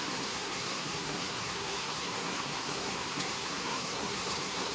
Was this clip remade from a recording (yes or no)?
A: yes